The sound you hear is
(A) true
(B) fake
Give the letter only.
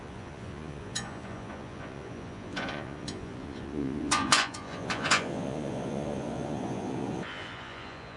B